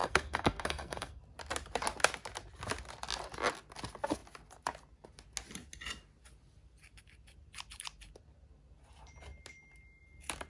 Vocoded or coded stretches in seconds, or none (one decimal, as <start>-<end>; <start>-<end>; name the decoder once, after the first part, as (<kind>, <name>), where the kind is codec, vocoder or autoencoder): 0.0-1.2 (codec, SNAC)